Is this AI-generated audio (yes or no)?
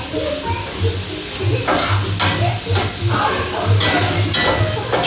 no